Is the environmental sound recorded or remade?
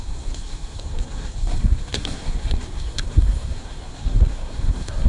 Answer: remade